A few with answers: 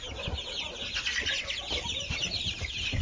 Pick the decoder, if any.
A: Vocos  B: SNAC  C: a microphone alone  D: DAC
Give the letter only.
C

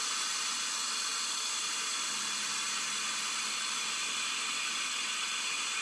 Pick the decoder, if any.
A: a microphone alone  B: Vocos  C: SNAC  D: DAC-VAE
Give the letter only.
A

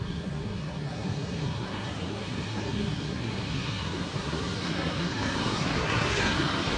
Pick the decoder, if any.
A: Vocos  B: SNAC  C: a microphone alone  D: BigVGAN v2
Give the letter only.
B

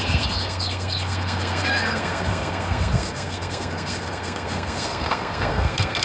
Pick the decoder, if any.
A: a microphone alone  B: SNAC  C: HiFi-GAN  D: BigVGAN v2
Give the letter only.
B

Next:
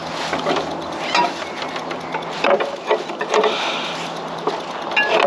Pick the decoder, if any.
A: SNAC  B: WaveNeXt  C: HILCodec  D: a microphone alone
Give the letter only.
D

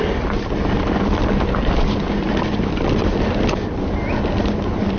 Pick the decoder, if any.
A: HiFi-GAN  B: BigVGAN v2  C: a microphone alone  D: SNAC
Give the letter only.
C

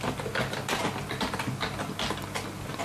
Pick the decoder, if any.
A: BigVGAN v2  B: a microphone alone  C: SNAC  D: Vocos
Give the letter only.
B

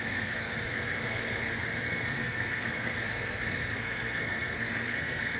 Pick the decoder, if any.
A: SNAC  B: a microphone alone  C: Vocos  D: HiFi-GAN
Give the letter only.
A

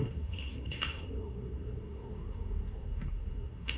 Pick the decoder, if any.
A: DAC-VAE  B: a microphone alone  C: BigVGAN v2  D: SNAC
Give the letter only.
D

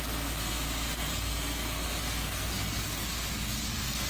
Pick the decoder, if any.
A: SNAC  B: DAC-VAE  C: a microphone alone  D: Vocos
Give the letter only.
A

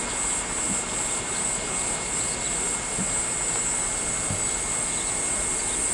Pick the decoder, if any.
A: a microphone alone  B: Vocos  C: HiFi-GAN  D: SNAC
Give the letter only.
A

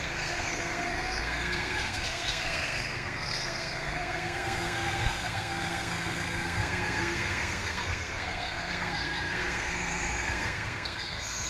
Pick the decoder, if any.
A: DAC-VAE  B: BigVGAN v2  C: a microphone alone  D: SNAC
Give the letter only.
D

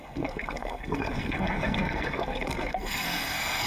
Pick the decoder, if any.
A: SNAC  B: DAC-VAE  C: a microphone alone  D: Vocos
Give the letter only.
A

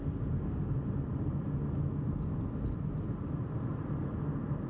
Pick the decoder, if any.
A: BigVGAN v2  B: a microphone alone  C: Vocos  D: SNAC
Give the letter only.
B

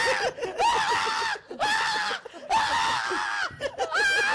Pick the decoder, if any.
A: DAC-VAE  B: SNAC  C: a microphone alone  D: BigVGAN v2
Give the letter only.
C